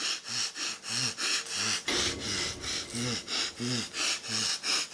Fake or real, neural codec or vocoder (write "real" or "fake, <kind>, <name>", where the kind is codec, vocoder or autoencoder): real